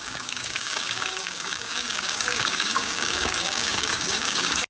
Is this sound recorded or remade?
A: remade